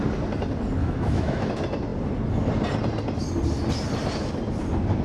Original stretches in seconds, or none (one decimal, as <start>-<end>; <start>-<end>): 0.0-0.8; 1.5-5.0